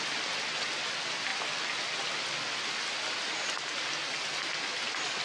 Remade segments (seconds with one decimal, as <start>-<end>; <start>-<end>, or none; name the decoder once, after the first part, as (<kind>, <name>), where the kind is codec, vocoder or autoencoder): none